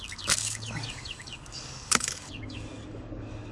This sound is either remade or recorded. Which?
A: remade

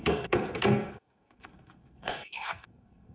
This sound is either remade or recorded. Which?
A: remade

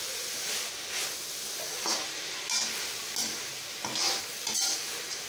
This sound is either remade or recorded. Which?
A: recorded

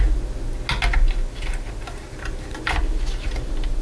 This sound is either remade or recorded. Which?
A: recorded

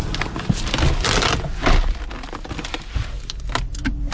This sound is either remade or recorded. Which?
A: recorded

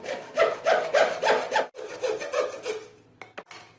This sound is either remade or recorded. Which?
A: recorded